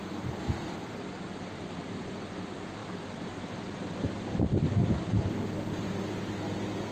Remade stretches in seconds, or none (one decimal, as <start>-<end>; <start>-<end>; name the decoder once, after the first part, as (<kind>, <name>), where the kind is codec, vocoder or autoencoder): 2.8-5.4 (vocoder, BigVGAN v2)

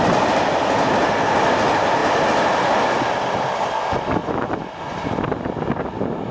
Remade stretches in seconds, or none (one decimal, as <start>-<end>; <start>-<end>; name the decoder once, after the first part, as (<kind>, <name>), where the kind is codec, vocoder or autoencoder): none